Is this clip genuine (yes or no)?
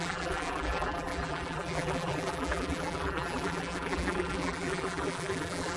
no